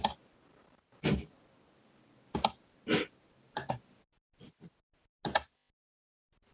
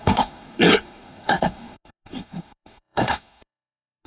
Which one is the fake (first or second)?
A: second